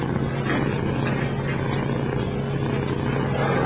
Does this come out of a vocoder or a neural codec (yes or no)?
no